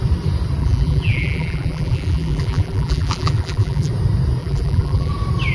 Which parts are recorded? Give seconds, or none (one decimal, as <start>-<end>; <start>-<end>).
0.0-0.6; 3.9-4.4; 5.1-5.5